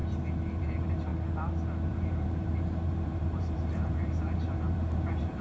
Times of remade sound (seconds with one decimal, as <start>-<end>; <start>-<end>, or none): 0.6-1.1; 1.9-5.4